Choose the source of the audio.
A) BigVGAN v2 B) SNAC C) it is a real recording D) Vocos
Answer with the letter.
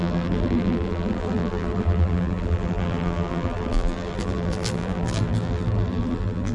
A